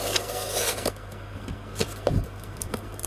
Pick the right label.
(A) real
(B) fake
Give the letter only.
B